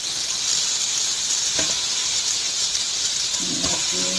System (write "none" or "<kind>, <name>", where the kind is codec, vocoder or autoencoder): none